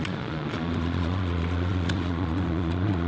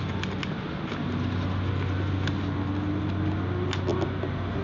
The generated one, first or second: first